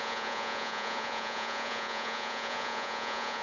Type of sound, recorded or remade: remade